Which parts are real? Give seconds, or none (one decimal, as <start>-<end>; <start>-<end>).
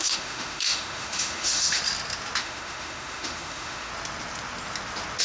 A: 1.8-2.4; 3.9-5.2